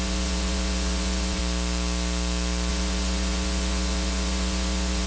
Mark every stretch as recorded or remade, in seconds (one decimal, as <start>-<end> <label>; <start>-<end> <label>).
0.0-1.4 remade; 1.4-2.7 recorded; 2.7-5.1 remade